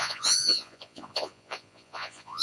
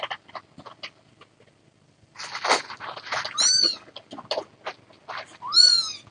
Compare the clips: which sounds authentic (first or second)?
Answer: second